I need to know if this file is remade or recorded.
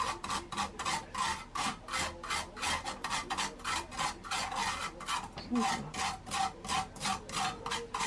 recorded